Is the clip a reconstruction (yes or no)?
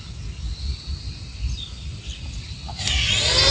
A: no